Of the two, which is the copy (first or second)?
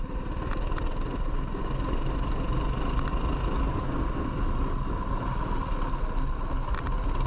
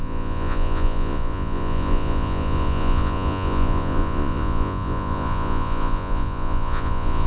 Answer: second